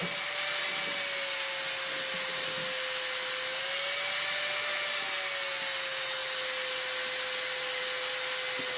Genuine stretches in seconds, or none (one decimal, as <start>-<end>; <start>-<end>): 0.0-8.8